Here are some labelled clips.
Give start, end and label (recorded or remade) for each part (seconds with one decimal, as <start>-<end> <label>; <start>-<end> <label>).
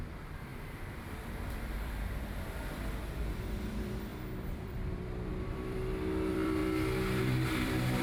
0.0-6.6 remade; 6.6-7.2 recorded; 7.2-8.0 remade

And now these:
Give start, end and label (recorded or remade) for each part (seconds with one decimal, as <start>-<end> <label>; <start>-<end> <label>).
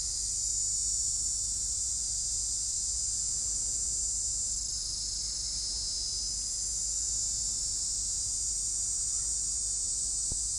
0.0-10.6 recorded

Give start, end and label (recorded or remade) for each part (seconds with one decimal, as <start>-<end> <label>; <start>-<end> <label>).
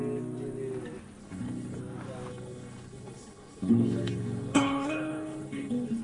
0.0-1.2 recorded; 1.2-1.8 remade; 1.8-2.3 recorded; 2.3-6.0 remade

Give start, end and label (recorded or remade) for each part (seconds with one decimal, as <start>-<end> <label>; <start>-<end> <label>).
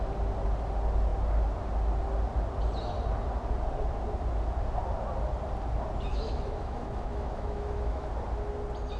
0.0-6.1 recorded; 6.1-8.1 remade; 8.1-9.0 recorded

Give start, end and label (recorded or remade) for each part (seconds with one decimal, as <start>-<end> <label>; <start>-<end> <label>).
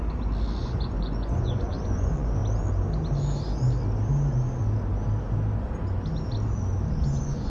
0.0-0.6 recorded; 0.6-2.4 remade; 2.4-6.9 recorded; 6.9-7.5 remade